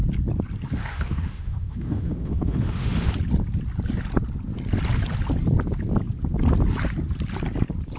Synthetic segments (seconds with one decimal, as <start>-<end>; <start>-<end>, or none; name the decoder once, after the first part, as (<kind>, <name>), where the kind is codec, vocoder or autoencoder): 0.8-3.1 (autoencoder, DAC-VAE)